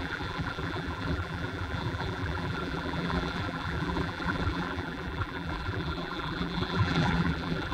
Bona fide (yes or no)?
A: no